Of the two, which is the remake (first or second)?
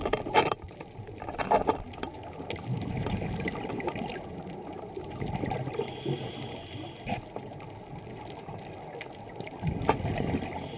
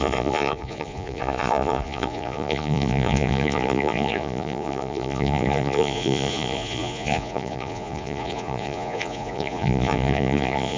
second